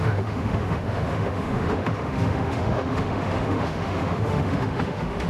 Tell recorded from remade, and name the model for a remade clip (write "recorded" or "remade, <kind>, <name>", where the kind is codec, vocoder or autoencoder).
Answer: remade, autoencoder, DAC-VAE